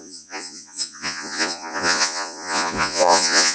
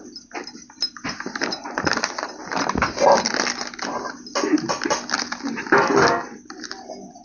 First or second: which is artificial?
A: first